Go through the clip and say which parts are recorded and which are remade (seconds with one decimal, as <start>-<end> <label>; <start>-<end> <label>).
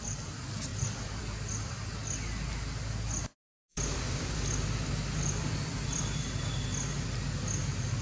0.0-0.7 recorded; 0.7-1.2 remade; 1.2-3.3 recorded; 3.3-6.2 remade; 6.2-8.0 recorded